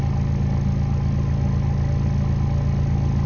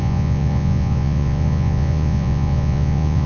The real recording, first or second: first